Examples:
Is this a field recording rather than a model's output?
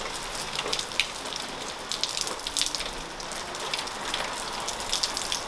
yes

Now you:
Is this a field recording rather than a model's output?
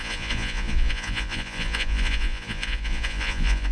no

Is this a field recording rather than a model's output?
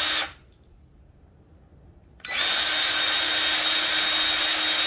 yes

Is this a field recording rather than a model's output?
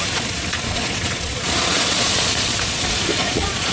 no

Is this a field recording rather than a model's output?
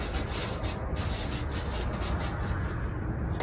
yes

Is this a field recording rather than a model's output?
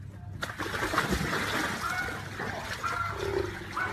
yes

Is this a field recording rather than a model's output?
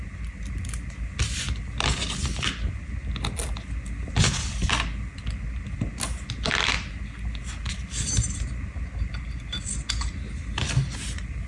yes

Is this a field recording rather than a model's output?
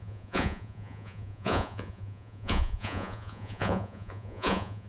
no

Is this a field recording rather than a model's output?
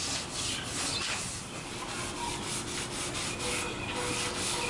yes